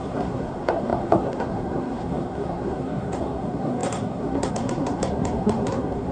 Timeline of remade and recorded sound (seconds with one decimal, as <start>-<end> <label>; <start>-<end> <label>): 0.0-6.1 remade